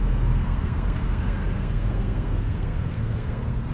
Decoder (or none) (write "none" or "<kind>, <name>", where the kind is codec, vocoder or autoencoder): codec, SNAC